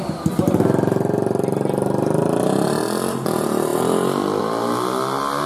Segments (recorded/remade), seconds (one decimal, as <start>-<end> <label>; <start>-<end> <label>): 0.0-5.5 recorded